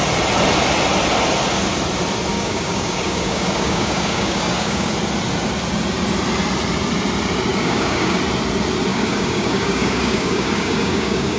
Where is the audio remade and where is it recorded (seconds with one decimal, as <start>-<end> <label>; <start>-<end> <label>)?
0.0-2.3 recorded; 2.3-4.9 remade; 4.9-7.5 recorded; 7.5-8.2 remade; 8.2-8.9 recorded; 8.9-11.4 remade